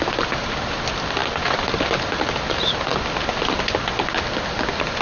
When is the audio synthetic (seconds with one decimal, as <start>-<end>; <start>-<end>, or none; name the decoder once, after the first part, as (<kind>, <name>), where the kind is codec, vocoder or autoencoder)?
none